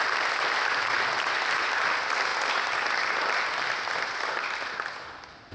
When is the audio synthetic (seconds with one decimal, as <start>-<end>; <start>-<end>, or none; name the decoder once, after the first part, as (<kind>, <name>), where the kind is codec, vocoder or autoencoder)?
none